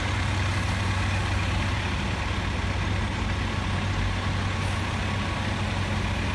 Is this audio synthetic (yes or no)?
no